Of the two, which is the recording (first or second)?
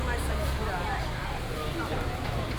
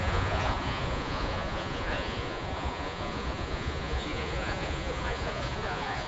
first